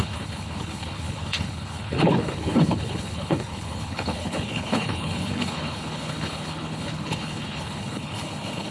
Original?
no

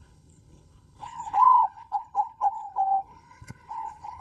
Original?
no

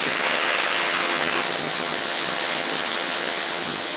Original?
no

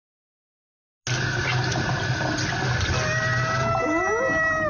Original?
yes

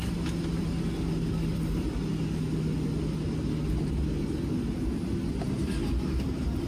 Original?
yes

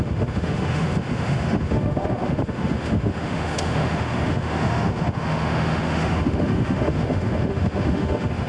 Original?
no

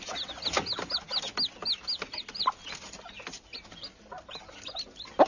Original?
yes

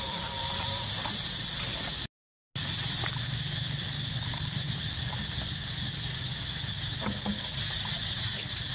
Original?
yes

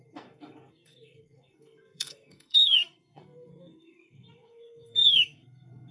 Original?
no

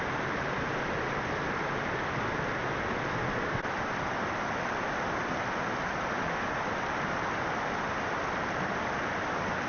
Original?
yes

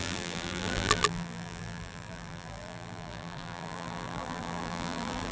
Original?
no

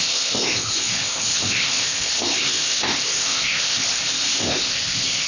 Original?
no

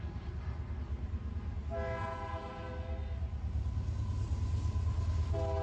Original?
yes